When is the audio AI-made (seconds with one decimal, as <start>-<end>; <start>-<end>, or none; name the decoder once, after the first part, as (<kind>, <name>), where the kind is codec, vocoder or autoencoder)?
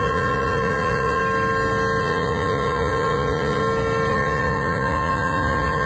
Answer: 0.0-1.2 (vocoder, Vocos); 2.0-3.6; 4.1-5.9